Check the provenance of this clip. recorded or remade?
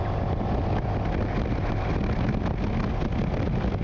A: recorded